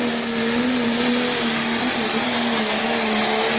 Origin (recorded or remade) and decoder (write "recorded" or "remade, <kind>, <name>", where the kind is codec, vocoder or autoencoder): recorded